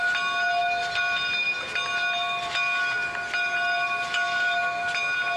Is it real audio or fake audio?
real